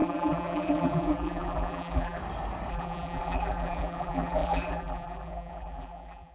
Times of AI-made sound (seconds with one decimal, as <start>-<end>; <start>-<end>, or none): 0.0-2.2; 2.7-6.3